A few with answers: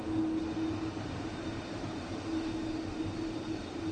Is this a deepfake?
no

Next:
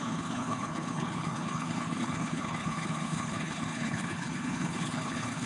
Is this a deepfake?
yes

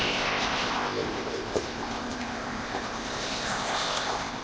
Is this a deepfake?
yes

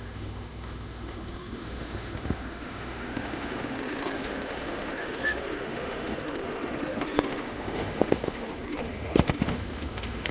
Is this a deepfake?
yes